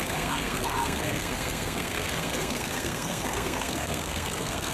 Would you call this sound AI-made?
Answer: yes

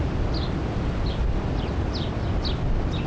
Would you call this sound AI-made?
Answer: no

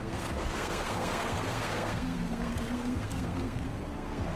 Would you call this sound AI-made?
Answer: yes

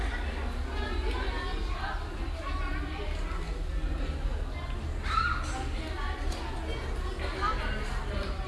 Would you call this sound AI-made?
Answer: no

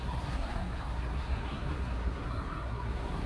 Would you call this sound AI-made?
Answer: yes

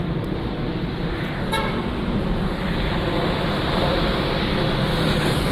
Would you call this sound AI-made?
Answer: no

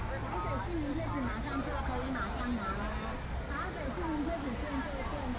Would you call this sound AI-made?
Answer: no